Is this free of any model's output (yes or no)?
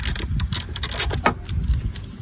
yes